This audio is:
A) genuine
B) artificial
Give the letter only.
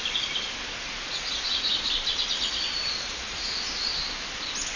A